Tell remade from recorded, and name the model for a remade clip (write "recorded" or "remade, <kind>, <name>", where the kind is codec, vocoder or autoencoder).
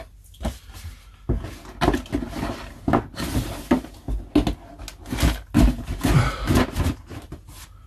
recorded